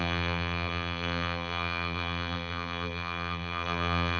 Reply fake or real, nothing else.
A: fake